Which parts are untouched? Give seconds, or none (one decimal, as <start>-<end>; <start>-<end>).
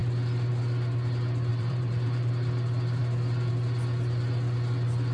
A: 0.0-1.5; 2.3-5.1